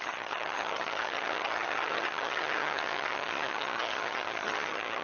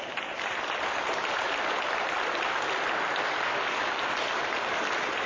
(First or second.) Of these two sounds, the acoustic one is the second